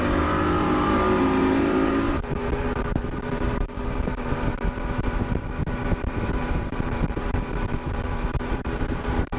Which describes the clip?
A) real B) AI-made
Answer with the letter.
B